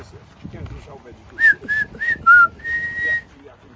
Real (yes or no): yes